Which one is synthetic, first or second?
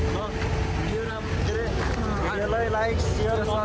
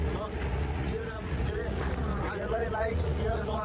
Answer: second